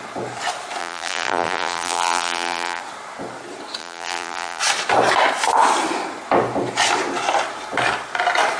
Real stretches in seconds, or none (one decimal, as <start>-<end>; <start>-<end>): 0.0-0.8; 2.8-3.8; 4.6-8.6